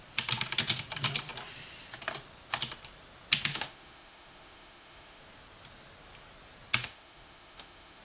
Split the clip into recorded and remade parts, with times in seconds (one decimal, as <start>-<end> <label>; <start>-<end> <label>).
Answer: 0.0-3.5 recorded; 3.5-5.2 remade; 5.2-6.8 recorded; 6.8-8.0 remade